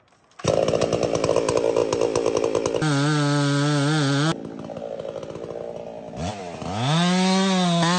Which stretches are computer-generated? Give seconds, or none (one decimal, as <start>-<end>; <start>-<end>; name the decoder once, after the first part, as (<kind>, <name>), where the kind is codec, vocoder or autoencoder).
none